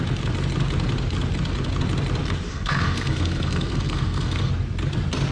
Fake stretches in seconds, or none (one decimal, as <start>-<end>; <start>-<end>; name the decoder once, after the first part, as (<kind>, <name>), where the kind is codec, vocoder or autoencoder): 2.5-4.5 (codec, SNAC)